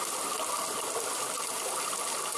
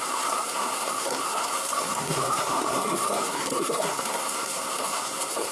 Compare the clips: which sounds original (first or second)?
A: first